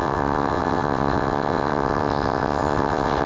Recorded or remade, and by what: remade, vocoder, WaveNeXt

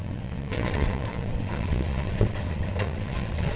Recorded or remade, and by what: remade, vocoder, WaveNeXt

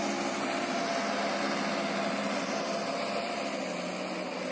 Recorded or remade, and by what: recorded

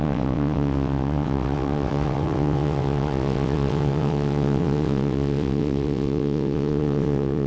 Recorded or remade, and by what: remade, vocoder, WaveNeXt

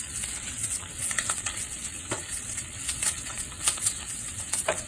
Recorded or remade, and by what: remade, vocoder, WaveNeXt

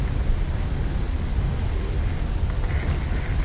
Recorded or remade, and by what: recorded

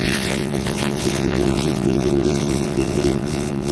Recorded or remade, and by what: remade, vocoder, WaveNeXt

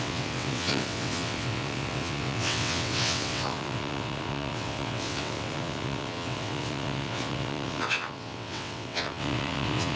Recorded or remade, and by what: remade, vocoder, WaveNeXt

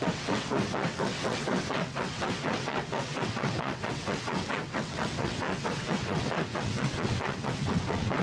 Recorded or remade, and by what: remade, vocoder, WaveNeXt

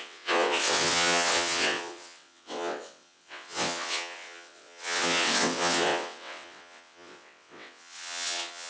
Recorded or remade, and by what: remade, vocoder, WaveNeXt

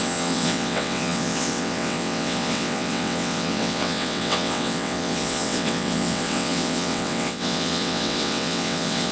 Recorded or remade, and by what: remade, vocoder, WaveNeXt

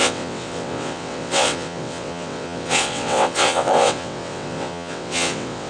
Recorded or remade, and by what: remade, vocoder, WaveNeXt